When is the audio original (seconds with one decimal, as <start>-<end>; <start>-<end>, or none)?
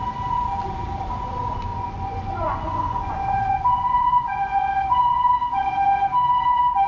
0.0-1.7; 5.7-6.9